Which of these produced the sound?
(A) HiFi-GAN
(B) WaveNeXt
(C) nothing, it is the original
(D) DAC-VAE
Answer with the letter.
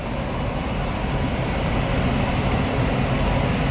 C